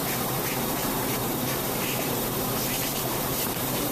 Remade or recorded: remade